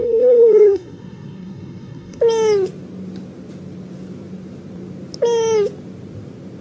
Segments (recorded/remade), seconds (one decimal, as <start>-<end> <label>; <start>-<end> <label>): 0.0-2.2 remade; 2.2-6.6 recorded